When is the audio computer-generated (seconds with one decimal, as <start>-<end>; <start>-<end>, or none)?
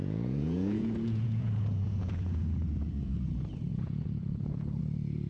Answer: 0.0-3.2; 3.7-4.8